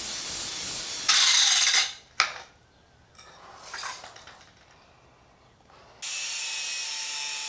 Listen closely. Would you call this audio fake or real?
real